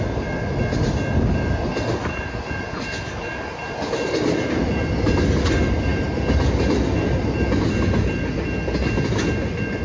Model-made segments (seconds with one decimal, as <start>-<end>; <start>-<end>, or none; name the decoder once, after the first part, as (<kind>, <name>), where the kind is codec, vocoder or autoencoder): none